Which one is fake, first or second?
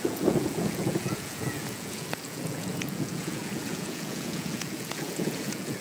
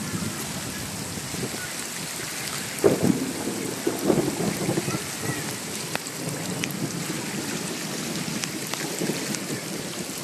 first